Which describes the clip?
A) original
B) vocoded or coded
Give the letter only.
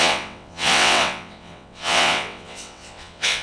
B